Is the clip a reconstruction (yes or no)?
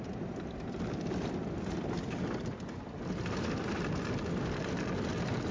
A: no